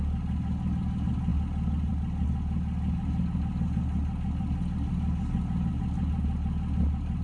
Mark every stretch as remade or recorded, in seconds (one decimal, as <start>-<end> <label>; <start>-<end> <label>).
0.0-7.2 recorded